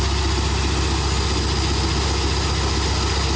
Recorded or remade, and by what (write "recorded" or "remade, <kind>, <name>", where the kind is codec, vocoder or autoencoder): recorded